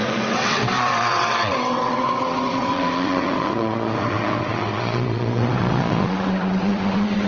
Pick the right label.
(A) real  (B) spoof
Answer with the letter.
B